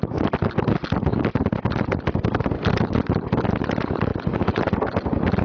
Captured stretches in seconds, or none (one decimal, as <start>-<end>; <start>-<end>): 0.0-5.4